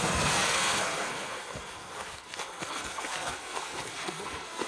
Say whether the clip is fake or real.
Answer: fake